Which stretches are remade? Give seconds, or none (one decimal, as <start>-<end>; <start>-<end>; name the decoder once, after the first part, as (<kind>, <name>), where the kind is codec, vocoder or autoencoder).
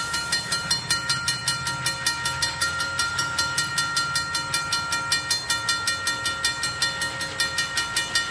0.0-1.4 (vocoder, BigVGAN v2); 2.4-3.7